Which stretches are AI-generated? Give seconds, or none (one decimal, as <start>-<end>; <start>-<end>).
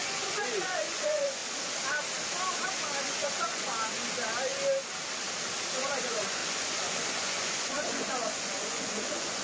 0.0-1.4; 3.0-3.7; 6.0-9.4